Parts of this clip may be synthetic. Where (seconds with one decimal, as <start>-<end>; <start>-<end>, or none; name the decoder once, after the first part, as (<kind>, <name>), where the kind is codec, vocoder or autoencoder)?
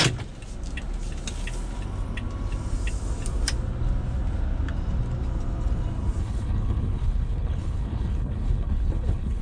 6.2-9.4 (codec, HILCodec)